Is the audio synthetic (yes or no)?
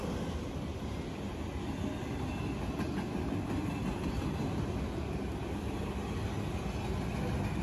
no